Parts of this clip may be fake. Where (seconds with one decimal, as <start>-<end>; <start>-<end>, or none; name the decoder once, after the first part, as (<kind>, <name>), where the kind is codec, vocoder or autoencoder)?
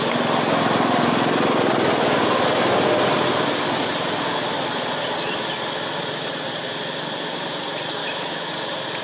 8.0-8.5 (autoencoder, DAC-VAE)